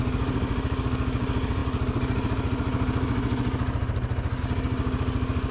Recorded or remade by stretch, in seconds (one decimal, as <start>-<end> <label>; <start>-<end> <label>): 0.0-5.5 recorded